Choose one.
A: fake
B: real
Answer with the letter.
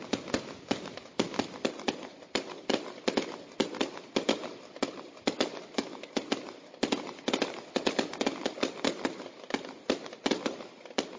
B